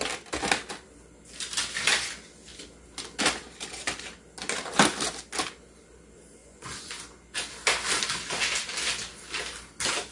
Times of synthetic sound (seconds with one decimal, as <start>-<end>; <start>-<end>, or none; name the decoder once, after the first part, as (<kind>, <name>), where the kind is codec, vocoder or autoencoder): 6.4-6.9 (vocoder, Vocos)